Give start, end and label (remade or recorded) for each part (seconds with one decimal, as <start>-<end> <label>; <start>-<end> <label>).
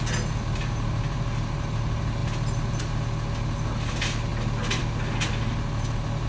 0.0-6.3 recorded